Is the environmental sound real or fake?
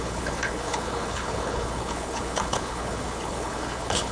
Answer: fake